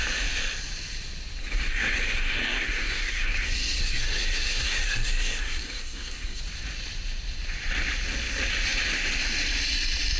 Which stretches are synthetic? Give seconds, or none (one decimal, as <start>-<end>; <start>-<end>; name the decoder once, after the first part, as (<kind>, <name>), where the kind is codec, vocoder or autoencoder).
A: 1.4-6.4 (codec, SNAC)